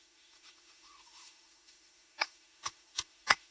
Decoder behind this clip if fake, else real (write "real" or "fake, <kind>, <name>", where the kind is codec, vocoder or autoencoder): fake, autoencoder, DAC-VAE